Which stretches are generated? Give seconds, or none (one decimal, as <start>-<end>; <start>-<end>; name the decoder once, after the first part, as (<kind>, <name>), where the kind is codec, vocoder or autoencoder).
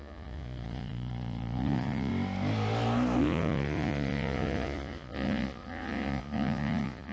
0.0-2.1 (vocoder, Vocos); 3.2-7.1